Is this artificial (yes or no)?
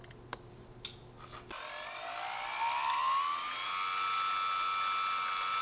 no